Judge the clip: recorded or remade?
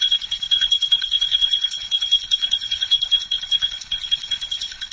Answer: remade